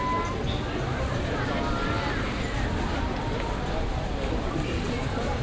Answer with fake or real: real